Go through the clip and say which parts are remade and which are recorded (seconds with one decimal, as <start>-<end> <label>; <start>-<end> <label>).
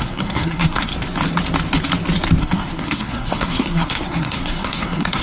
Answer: 0.0-0.9 remade; 0.9-2.4 recorded; 2.4-5.2 remade